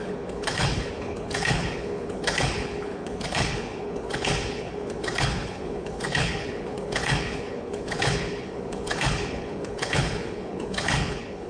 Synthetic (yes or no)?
yes